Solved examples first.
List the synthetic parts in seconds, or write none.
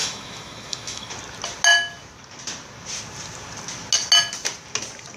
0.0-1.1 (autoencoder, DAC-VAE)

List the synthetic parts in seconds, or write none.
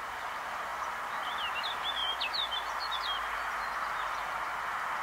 none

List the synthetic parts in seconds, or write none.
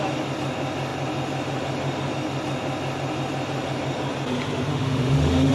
4.7-5.5 (autoencoder, DAC-VAE)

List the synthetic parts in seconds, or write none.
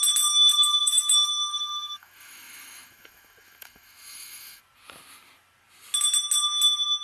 0.5-4.6 (autoencoder, DAC-VAE)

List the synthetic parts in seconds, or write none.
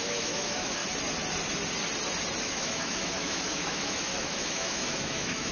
0.0-0.8 (autoencoder, DAC-VAE); 2.4-5.5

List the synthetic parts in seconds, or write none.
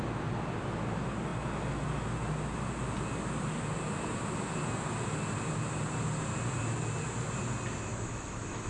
7.9-8.7 (autoencoder, DAC-VAE)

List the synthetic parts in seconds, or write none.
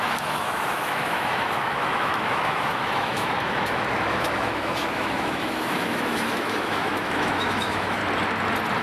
0.0-8.0 (autoencoder, DAC-VAE)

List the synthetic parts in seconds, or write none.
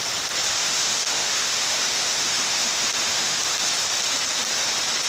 0.6-3.7 (autoencoder, DAC-VAE)